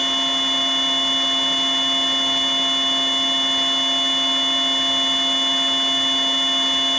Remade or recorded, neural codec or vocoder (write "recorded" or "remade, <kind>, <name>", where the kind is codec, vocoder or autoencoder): recorded